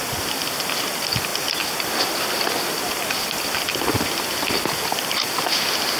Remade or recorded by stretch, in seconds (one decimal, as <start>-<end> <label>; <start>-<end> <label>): 0.0-6.0 recorded

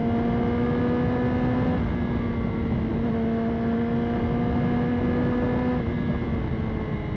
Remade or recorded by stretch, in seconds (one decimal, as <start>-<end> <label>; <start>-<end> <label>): 0.0-7.2 recorded